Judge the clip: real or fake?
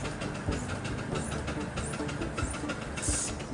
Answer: real